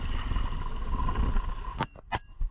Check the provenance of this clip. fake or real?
real